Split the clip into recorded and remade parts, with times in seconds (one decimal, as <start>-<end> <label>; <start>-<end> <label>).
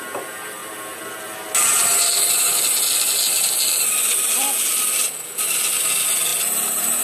0.0-7.0 recorded